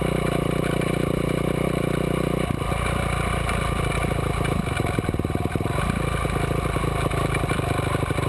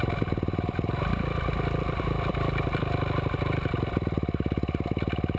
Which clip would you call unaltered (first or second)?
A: first